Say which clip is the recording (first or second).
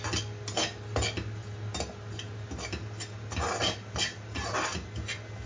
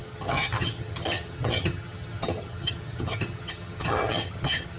first